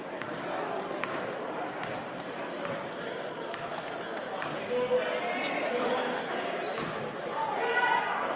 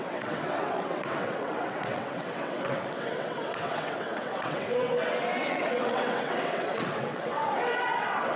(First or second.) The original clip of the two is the first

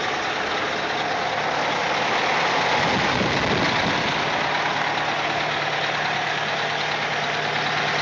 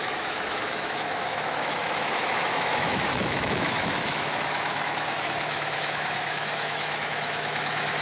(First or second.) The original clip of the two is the first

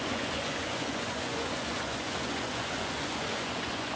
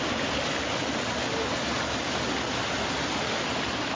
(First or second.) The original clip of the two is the second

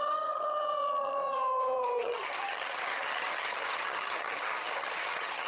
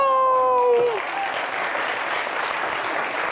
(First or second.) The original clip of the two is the second